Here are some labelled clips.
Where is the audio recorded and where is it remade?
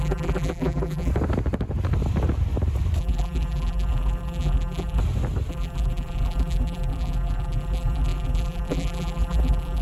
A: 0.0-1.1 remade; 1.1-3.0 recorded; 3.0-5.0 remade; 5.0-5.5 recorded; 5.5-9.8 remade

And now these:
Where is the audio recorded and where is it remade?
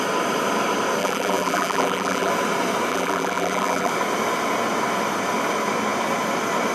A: 0.0-1.0 recorded; 1.0-2.3 remade; 2.3-2.9 recorded; 2.9-3.9 remade; 3.9-6.7 recorded